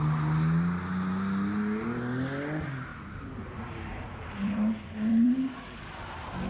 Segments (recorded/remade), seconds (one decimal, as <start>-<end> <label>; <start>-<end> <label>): 0.0-2.9 recorded; 2.9-5.6 remade; 5.6-6.5 recorded